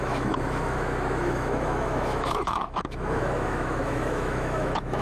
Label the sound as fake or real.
fake